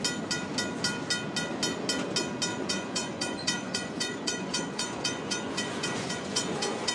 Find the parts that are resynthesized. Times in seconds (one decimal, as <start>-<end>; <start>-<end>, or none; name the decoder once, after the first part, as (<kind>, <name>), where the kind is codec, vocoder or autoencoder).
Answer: 2.5-6.9 (vocoder, Vocos)